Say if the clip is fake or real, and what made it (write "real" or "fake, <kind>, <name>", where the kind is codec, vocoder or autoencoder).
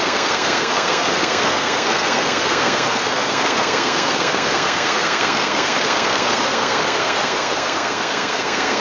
fake, codec, SNAC